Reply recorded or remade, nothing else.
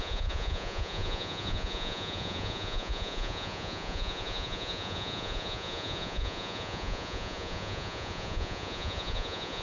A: remade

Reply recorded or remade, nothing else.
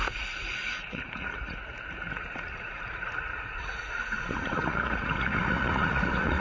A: remade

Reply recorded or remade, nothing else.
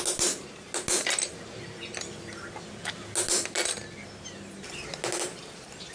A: recorded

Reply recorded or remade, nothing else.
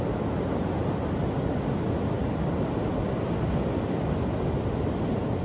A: recorded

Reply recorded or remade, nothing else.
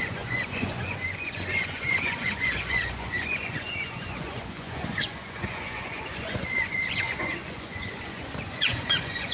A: remade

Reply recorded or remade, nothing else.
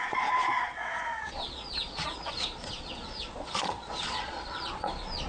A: remade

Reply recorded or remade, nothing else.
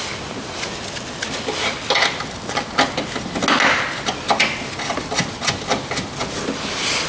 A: recorded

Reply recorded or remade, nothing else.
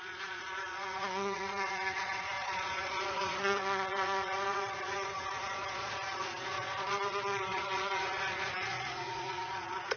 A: remade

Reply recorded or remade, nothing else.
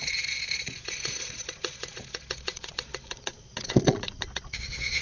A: remade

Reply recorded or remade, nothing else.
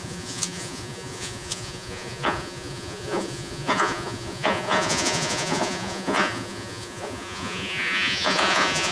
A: remade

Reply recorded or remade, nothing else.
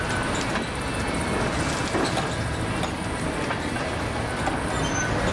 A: recorded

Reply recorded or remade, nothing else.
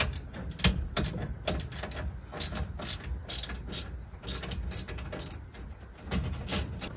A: recorded